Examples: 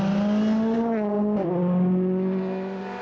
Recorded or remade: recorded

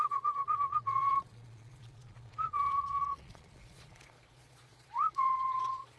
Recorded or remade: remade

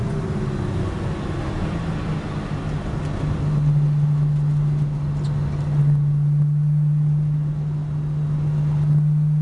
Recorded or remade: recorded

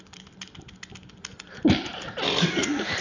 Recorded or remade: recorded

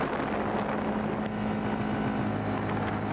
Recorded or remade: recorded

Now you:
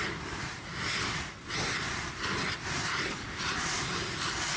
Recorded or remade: recorded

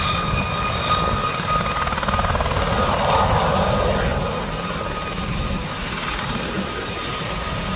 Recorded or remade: recorded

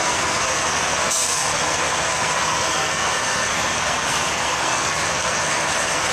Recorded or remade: remade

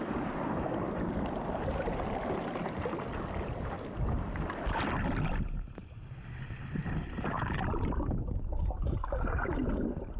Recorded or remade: recorded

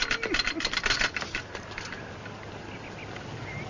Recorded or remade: recorded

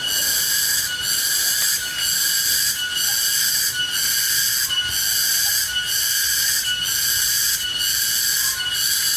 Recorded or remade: recorded